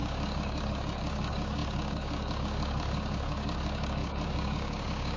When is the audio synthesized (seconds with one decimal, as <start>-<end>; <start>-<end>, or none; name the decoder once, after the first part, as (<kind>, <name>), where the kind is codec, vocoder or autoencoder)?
0.0-5.2 (codec, DAC)